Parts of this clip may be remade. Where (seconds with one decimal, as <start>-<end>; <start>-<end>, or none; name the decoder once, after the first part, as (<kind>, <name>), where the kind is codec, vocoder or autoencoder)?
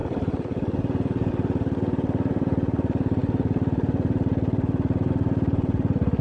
none